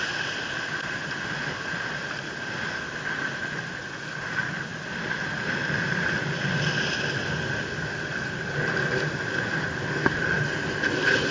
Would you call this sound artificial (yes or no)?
no